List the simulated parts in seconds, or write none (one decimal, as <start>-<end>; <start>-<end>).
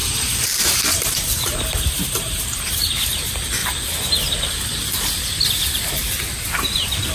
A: 0.0-2.9